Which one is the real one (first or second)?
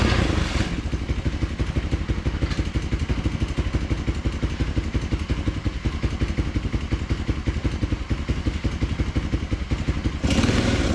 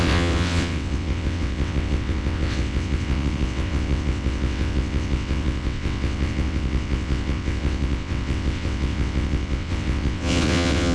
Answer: first